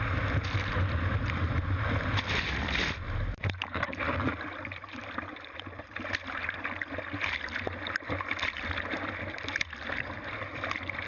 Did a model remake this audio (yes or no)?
no